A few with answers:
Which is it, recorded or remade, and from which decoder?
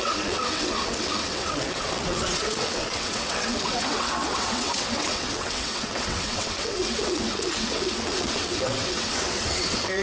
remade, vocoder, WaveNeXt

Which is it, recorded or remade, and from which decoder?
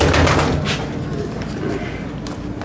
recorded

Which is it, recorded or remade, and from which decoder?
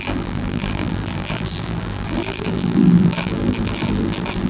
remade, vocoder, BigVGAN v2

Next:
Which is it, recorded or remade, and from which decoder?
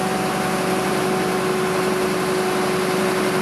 recorded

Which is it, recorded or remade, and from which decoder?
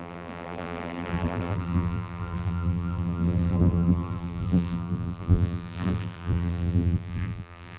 remade, vocoder, BigVGAN v2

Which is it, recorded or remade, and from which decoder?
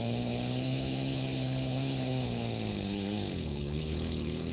remade, codec, HILCodec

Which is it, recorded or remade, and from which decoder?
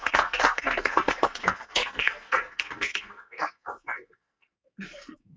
remade, codec, SNAC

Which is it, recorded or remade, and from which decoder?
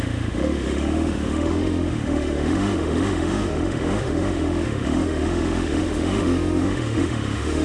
remade, autoencoder, DAC-VAE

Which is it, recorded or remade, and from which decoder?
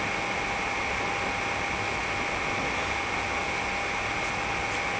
recorded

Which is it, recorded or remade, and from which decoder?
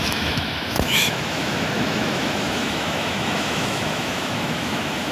remade, autoencoder, DAC-VAE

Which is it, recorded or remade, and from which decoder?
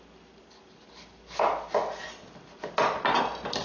recorded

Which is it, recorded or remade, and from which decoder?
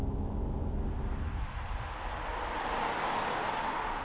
recorded